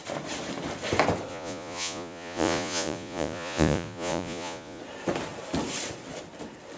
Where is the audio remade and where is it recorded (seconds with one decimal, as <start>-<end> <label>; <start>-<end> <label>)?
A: 0.0-1.3 recorded; 1.3-4.8 remade; 4.8-6.8 recorded

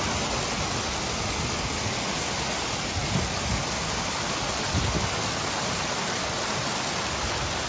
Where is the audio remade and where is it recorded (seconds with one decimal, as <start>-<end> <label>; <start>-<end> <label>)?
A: 0.0-7.7 recorded

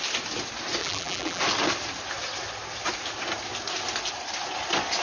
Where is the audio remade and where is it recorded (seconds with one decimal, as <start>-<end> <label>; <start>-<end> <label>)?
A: 0.0-0.8 recorded; 0.8-1.4 remade; 1.4-5.0 recorded

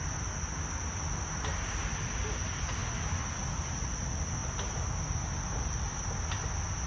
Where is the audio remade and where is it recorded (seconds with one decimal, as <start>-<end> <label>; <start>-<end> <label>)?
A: 0.0-4.4 recorded; 4.4-4.9 remade; 4.9-6.9 recorded

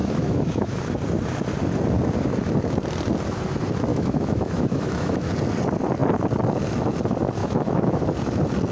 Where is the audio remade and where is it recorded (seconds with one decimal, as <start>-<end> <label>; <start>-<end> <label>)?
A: 0.0-0.8 remade; 0.8-3.9 recorded; 3.9-5.3 remade; 5.3-7.4 recorded; 7.4-8.0 remade; 8.0-8.7 recorded

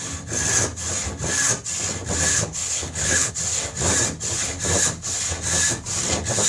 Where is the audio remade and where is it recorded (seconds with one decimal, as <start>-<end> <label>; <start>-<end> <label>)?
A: 0.0-2.3 recorded; 2.3-3.3 remade; 3.3-6.5 recorded

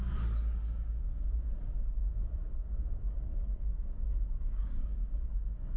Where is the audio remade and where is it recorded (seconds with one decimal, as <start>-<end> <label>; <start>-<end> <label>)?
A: 0.0-0.6 recorded; 0.6-1.5 remade; 1.5-2.0 recorded; 2.0-5.8 remade

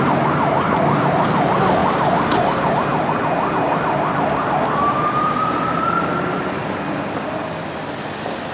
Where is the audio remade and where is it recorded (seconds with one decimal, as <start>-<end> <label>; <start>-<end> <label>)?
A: 0.0-1.8 recorded; 1.8-2.7 remade; 2.7-8.5 recorded